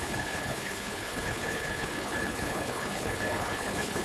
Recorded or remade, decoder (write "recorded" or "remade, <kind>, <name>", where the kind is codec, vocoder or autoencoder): remade, codec, HILCodec